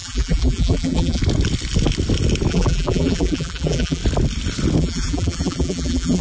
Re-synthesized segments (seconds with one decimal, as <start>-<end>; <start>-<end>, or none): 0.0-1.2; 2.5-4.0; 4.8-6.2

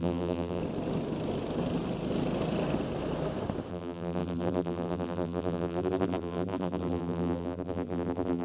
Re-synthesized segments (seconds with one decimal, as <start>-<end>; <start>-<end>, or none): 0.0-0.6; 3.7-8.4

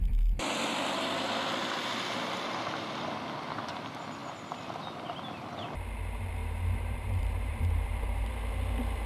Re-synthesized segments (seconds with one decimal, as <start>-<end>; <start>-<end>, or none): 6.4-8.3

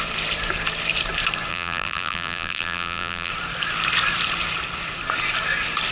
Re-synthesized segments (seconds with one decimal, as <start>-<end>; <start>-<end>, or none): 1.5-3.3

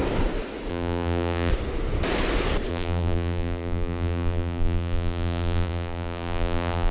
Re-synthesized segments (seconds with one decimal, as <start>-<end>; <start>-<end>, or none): 0.7-1.5; 2.7-6.9

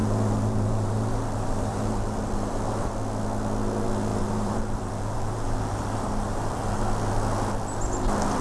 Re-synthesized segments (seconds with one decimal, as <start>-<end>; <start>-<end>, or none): 0.0-2.9; 4.1-6.8